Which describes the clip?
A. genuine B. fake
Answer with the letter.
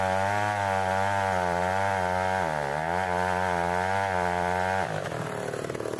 A